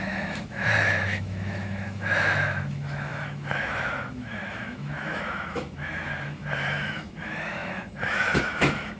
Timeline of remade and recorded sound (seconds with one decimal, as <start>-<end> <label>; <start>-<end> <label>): 0.0-9.0 remade